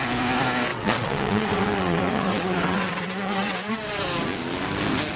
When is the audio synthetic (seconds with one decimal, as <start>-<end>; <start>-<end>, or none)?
0.7-3.7